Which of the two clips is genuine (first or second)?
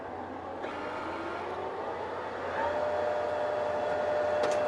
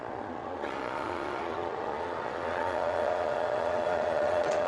first